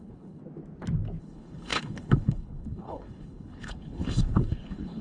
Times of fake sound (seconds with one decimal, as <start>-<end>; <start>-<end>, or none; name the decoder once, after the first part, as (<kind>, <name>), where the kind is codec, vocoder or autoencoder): 0.0-0.4 (codec, HILCodec); 1.2-5.0